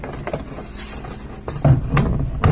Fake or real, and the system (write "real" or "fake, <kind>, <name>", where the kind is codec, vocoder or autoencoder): real